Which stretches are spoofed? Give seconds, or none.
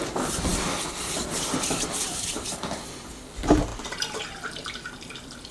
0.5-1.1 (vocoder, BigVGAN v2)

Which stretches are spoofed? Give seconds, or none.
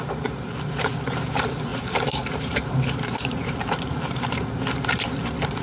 0.0-5.6 (vocoder, BigVGAN v2)